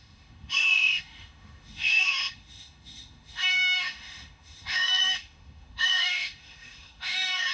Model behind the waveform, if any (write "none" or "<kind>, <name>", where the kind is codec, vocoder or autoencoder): autoencoder, DAC-VAE